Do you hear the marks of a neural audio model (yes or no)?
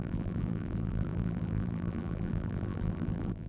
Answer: yes